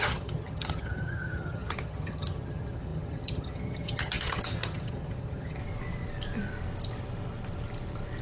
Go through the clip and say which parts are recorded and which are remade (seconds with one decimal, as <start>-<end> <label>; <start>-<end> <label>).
0.0-5.6 remade; 5.6-8.2 recorded